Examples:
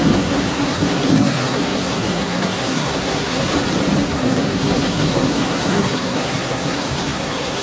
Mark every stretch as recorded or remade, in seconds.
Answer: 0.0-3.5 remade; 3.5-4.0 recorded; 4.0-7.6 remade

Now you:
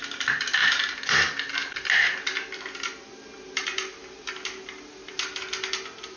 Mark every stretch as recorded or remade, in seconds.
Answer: 0.0-6.2 recorded

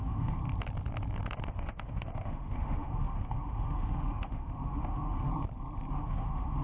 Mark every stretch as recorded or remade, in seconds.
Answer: 0.0-0.4 remade; 0.4-1.5 recorded; 1.5-5.3 remade; 5.3-5.9 recorded; 5.9-6.6 remade

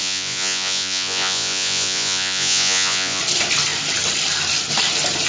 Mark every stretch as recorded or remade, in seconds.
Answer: 0.0-3.2 remade; 3.2-5.3 recorded

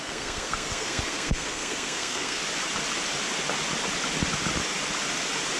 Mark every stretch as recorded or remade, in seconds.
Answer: 0.0-2.4 remade; 2.4-5.6 recorded

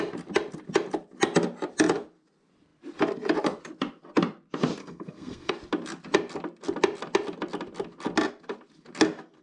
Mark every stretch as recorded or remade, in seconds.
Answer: 0.0-4.8 recorded; 4.8-5.5 remade; 5.5-9.4 recorded

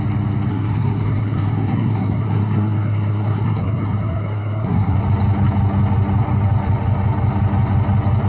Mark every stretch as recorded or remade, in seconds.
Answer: 0.0-0.5 recorded; 0.5-5.0 remade; 5.0-8.3 recorded